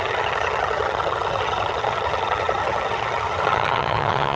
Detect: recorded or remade remade